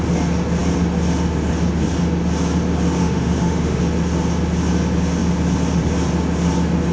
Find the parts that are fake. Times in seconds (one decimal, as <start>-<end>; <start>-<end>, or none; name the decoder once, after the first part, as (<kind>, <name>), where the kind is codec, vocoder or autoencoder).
3.0-3.8 (autoencoder, DAC-VAE)